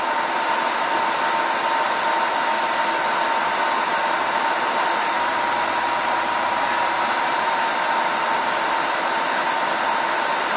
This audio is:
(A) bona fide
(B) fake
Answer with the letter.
A